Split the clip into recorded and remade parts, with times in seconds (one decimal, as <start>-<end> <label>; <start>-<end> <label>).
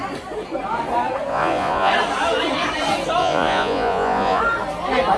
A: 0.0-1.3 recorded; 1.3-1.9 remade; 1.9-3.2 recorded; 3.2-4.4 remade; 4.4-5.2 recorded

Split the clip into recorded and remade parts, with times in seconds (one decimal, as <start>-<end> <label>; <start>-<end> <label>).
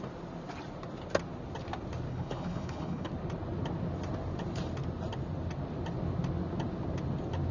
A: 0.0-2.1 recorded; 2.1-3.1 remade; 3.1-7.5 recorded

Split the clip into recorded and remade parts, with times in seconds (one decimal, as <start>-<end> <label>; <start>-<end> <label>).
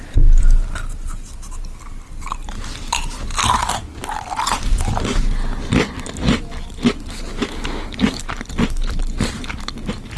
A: 0.0-7.3 recorded; 7.3-8.3 remade; 8.3-10.2 recorded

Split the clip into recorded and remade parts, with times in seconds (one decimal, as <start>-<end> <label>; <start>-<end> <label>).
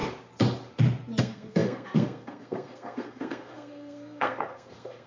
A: 0.0-1.2 recorded; 1.2-5.1 remade